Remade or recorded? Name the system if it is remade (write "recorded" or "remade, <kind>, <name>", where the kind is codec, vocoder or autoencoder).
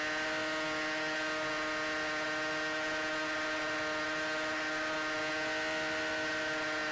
recorded